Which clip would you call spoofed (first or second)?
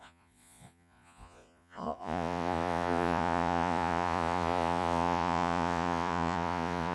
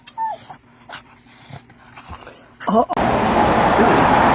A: first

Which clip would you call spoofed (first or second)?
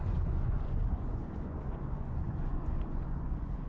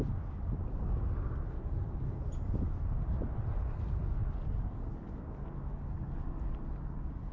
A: first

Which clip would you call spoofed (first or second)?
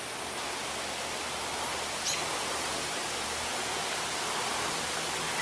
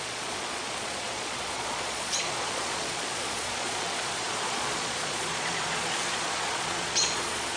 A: second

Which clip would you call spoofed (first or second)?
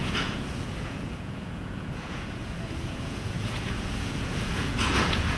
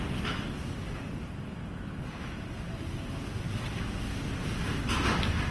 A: first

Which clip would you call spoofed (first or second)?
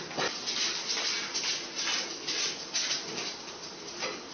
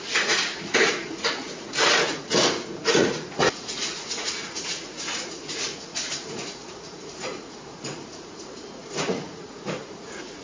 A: second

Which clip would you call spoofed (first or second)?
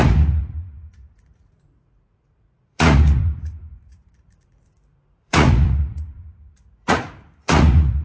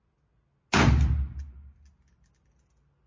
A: first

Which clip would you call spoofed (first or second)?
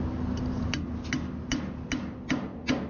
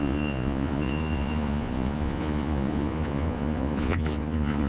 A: second